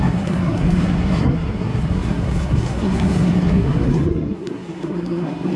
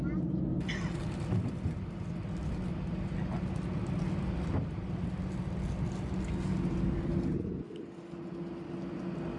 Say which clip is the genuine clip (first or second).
second